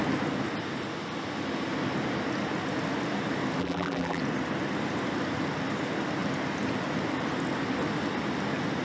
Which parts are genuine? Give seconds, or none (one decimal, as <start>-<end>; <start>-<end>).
0.0-3.6; 4.2-8.8